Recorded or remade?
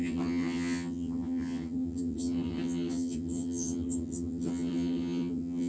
remade